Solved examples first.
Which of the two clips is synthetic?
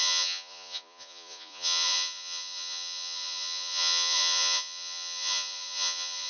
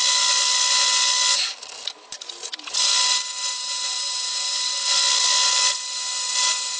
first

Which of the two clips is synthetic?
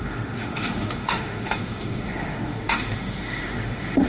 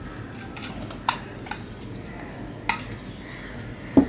first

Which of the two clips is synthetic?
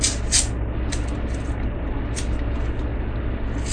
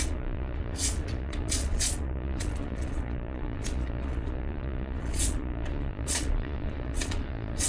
second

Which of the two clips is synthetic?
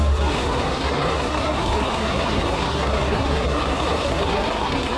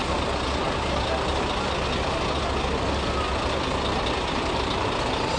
first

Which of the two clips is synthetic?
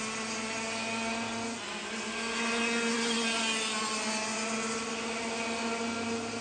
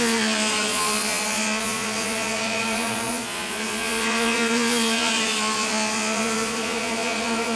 second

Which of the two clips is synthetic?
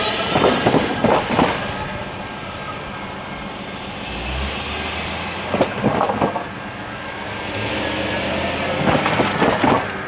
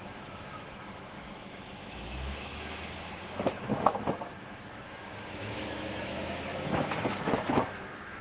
second